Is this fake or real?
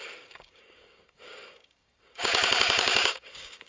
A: fake